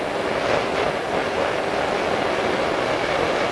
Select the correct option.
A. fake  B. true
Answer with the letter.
B